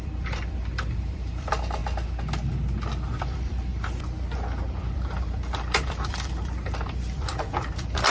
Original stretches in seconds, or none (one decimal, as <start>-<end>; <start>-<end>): 1.8-3.2; 3.7-4.8